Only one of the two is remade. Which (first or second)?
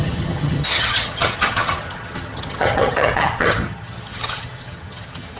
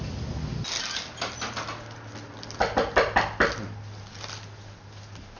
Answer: first